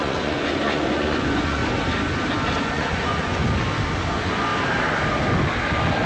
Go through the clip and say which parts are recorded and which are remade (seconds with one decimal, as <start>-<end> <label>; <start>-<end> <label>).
0.0-1.6 remade; 1.6-2.6 recorded; 2.6-3.4 remade; 3.4-4.1 recorded; 4.1-4.5 remade; 4.5-6.1 recorded